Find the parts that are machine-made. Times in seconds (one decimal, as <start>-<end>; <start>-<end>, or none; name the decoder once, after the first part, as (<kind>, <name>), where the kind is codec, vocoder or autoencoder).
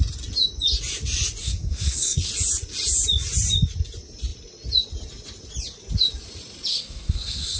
1.4-2.3 (codec, SNAC); 6.7-7.6